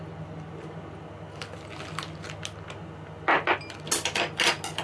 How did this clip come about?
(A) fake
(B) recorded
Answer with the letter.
B